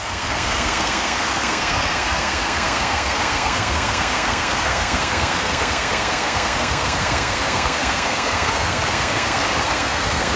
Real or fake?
fake